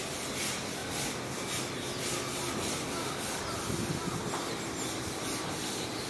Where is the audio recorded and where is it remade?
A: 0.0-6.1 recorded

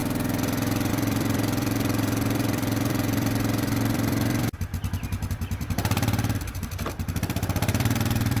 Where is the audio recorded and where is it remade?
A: 0.0-0.9 recorded; 0.9-4.7 remade; 4.7-5.3 recorded; 5.3-8.4 remade

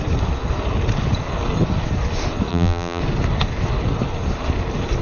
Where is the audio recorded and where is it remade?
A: 0.0-2.5 recorded; 2.5-3.0 remade; 3.0-5.0 recorded

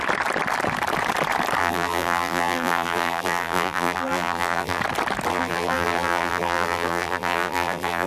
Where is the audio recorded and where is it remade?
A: 0.0-1.6 recorded; 1.6-4.8 remade; 4.8-5.3 recorded; 5.3-8.1 remade

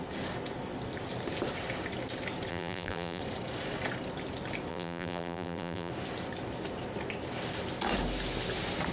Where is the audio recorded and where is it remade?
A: 0.0-2.5 recorded; 2.5-3.2 remade; 3.2-4.7 recorded; 4.7-5.9 remade; 5.9-8.9 recorded

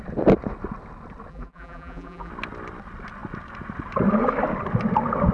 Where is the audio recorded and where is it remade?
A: 0.0-1.3 recorded; 1.3-2.3 remade; 2.3-5.3 recorded

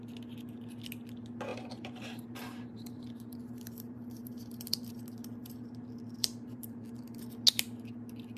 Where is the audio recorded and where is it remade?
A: 0.0-1.5 recorded; 1.5-4.9 remade; 4.9-5.4 recorded; 5.4-7.3 remade; 7.3-8.4 recorded